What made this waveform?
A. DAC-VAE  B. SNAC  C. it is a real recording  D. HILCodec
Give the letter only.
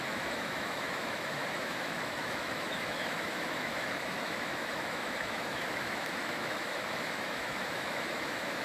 A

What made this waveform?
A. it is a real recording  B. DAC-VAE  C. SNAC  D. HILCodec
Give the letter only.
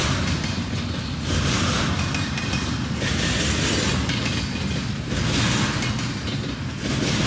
A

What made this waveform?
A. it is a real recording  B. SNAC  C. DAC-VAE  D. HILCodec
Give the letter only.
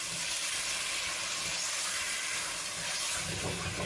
A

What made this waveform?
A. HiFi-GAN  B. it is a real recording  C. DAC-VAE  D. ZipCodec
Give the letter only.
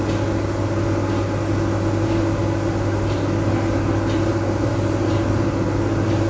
B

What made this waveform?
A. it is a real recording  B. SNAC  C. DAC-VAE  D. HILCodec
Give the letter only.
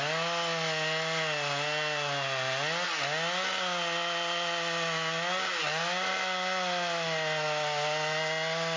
A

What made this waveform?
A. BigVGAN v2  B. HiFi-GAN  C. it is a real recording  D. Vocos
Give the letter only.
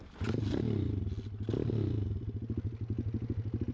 C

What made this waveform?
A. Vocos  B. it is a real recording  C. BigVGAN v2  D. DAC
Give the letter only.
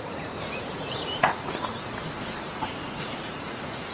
A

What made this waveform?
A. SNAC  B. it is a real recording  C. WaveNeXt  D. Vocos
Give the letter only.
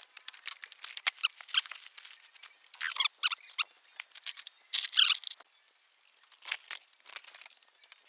B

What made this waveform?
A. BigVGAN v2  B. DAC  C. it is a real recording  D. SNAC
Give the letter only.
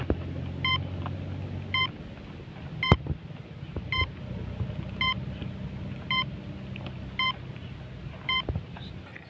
C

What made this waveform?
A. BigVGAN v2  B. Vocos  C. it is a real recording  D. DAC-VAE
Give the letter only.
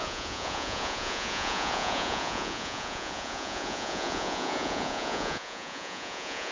B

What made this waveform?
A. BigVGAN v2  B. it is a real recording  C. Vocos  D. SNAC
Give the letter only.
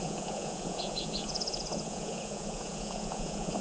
C